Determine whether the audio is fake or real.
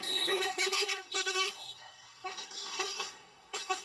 fake